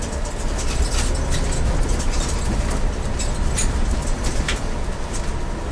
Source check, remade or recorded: recorded